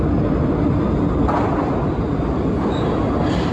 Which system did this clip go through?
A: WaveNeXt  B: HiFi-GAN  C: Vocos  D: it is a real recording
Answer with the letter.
D